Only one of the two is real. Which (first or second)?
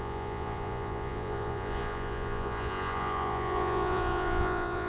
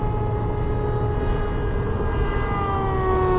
second